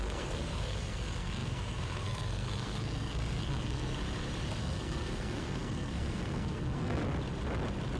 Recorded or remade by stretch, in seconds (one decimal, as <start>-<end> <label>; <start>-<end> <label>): 0.0-4.0 remade; 4.0-4.6 recorded; 4.6-7.0 remade; 7.0-8.0 recorded